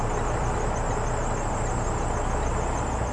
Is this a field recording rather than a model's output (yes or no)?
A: yes